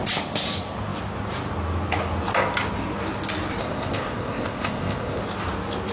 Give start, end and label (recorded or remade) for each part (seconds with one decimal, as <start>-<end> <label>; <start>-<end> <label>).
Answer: 0.0-3.6 recorded; 3.6-5.2 remade; 5.2-5.9 recorded